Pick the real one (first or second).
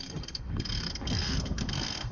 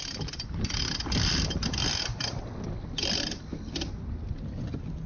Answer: second